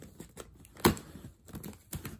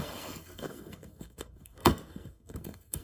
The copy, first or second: second